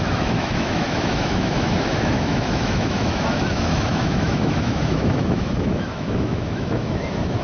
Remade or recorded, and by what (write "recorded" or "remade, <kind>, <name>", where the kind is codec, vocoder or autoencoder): remade, autoencoder, DAC-VAE